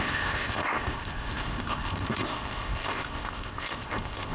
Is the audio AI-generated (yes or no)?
yes